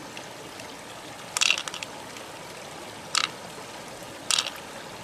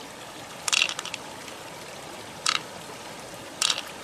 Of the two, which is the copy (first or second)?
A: second